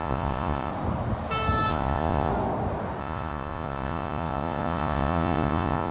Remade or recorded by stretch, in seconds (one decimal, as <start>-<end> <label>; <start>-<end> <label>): 0.0-0.7 remade; 0.7-1.7 recorded; 1.7-2.3 remade; 2.3-3.0 recorded; 3.0-5.9 remade